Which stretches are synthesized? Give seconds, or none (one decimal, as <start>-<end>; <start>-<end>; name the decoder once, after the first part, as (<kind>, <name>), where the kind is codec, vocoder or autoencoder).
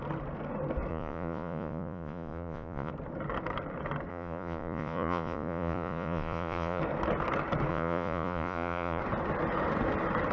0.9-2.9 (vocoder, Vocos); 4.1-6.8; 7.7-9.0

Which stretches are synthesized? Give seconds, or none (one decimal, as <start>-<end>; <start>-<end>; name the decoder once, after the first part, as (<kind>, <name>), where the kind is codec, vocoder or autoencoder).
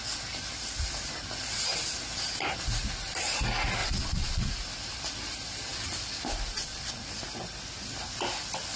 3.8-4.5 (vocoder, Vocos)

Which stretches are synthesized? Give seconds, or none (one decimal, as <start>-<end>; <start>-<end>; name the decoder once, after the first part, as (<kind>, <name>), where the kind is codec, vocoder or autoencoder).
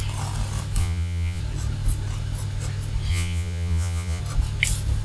0.8-1.4 (vocoder, Vocos); 3.1-4.2